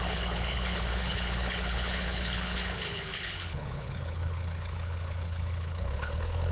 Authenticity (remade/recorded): remade